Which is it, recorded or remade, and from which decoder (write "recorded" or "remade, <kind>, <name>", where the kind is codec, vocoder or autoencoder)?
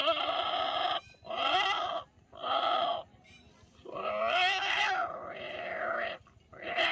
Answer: recorded